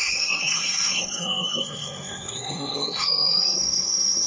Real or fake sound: fake